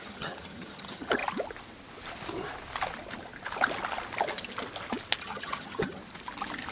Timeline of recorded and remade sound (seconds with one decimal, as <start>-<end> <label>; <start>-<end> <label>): 0.0-1.2 remade; 1.2-5.2 recorded; 5.2-6.0 remade; 6.0-6.7 recorded